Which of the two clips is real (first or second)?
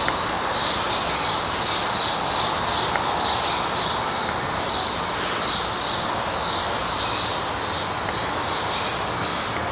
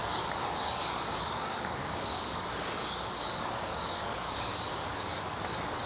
first